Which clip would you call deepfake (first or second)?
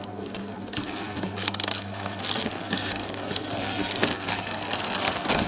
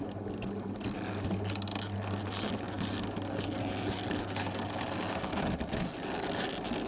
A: first